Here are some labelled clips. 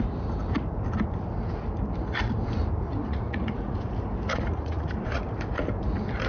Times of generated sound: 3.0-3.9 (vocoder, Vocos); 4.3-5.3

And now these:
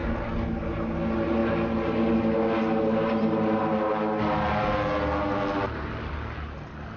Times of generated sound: none

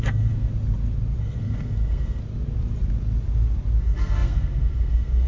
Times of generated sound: 0.0-0.5 (codec, SNAC); 1.2-2.2; 3.8-5.3